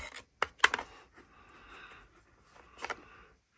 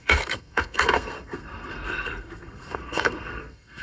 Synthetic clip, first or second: second